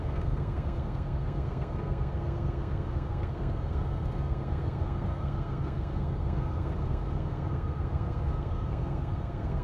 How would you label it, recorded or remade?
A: remade